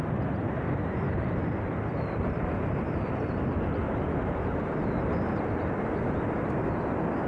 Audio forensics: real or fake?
real